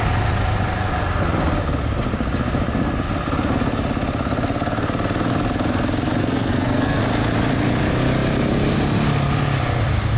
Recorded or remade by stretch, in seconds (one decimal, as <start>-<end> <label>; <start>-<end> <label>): 0.0-6.2 recorded; 6.2-7.0 remade; 7.0-10.2 recorded